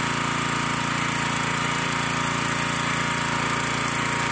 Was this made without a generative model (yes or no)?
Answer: yes